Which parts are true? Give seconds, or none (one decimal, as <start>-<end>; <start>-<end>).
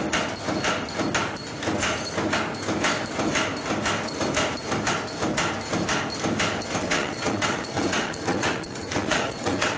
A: 0.0-6.8